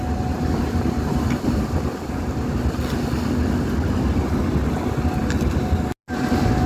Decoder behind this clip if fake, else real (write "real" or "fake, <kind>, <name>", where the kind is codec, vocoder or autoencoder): real